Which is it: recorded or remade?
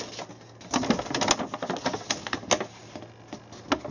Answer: recorded